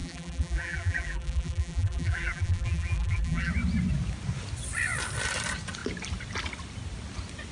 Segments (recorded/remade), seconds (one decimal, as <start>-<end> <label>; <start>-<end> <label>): 0.0-3.5 remade; 3.5-7.5 recorded

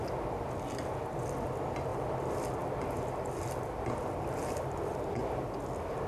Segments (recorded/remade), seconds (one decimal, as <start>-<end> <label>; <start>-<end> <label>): 0.0-1.9 recorded; 1.9-5.2 remade; 5.2-6.1 recorded

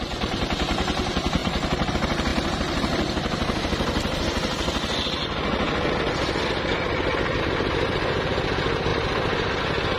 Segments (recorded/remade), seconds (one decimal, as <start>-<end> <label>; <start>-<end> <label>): 0.0-1.4 recorded; 1.4-1.9 remade; 1.9-8.9 recorded; 8.9-9.6 remade; 9.6-10.0 recorded

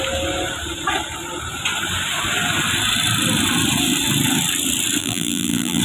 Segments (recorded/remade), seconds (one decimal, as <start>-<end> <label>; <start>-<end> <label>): 0.0-5.0 recorded; 5.0-5.8 remade

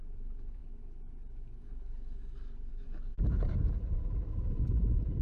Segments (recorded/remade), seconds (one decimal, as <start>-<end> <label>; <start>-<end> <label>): 0.0-0.6 remade; 0.6-2.7 recorded; 2.7-3.1 remade; 3.1-4.6 recorded; 4.6-5.2 remade

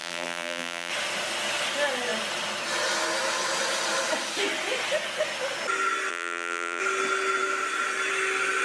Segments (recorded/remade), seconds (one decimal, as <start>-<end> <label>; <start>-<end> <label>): 0.0-0.9 remade; 0.9-6.1 recorded; 6.1-6.8 remade; 6.8-8.6 recorded